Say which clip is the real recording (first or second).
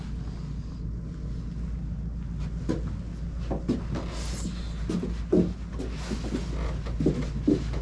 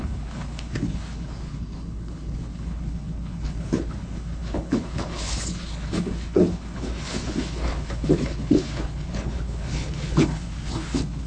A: first